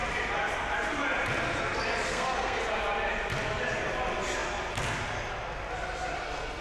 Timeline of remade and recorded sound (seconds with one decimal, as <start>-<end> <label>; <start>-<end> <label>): 0.0-2.1 recorded; 2.1-2.6 remade; 2.6-6.6 recorded